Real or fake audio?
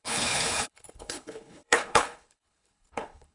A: fake